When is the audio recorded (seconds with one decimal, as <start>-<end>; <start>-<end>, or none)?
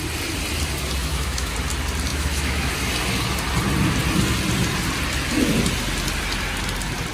0.0-1.0; 1.5-2.1; 2.7-7.1